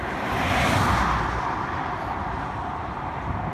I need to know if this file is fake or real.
real